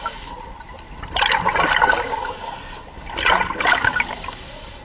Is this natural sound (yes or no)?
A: yes